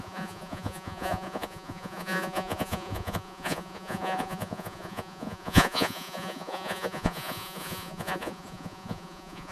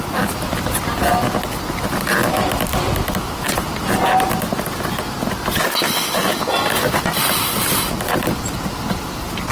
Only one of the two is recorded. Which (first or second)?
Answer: second